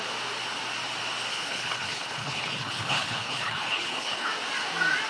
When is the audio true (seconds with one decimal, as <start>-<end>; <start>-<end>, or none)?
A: 0.0-1.3; 4.3-5.1